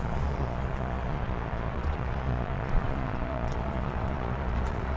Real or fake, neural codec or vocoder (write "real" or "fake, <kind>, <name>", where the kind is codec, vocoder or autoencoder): fake, vocoder, Vocos